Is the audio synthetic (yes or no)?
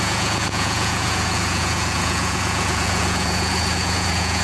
yes